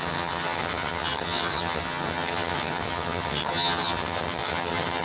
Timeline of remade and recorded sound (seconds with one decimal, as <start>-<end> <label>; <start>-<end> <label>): 0.0-5.0 remade